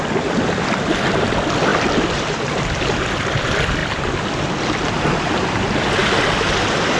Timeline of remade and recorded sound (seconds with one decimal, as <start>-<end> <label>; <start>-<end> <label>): 0.0-3.8 remade; 3.8-6.6 recorded; 6.6-7.0 remade